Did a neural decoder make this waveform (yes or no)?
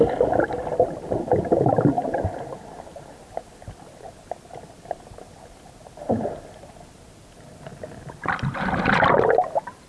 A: no